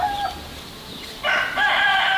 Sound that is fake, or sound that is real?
real